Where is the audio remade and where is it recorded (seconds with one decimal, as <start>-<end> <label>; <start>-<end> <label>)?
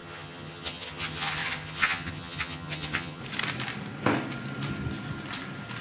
0.0-3.2 remade; 3.2-5.8 recorded